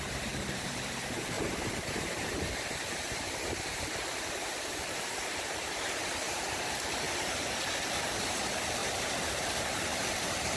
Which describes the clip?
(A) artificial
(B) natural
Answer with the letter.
A